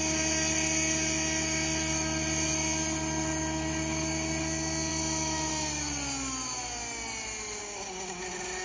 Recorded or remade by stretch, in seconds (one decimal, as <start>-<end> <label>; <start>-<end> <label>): 0.0-7.6 recorded; 7.6-8.2 remade; 8.2-8.6 recorded